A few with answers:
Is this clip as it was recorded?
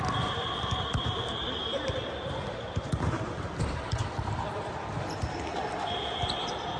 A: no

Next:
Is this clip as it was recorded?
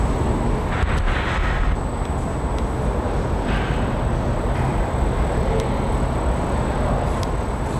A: yes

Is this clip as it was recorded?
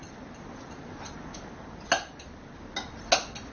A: yes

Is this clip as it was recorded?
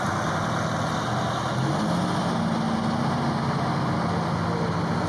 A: yes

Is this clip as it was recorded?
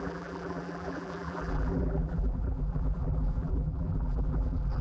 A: no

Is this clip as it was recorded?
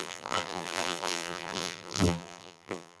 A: no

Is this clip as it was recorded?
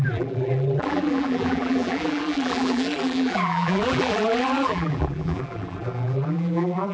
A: no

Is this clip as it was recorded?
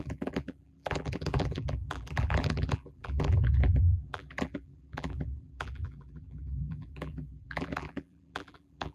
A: no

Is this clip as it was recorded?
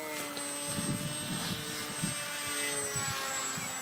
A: yes